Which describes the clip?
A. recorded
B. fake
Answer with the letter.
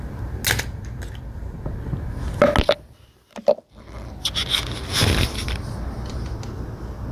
A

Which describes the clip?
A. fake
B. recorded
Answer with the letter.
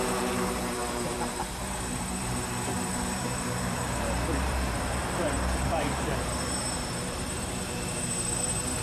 A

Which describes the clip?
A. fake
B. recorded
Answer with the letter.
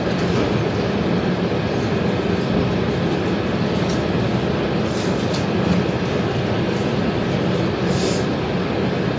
B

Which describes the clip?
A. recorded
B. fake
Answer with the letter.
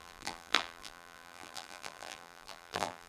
B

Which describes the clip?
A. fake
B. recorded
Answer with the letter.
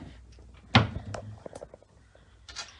B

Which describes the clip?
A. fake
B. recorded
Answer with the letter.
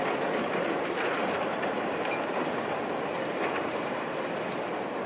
B